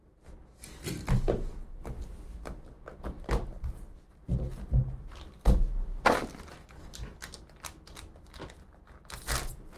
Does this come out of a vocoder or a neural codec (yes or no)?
no